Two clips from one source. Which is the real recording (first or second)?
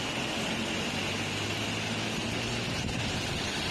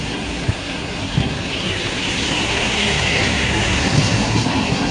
first